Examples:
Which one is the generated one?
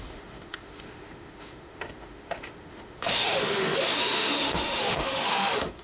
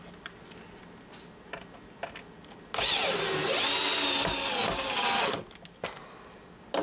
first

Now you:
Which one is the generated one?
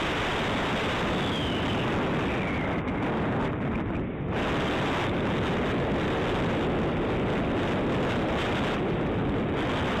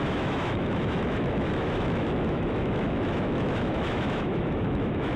second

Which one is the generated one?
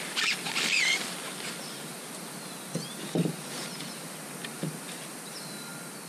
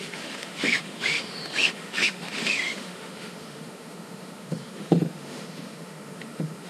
second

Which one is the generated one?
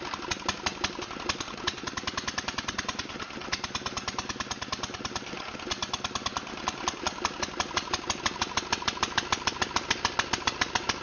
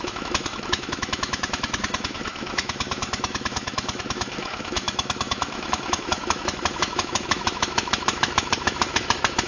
second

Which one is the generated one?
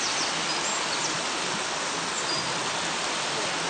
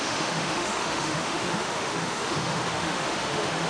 second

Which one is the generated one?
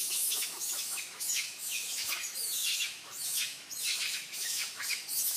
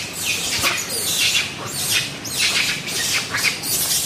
first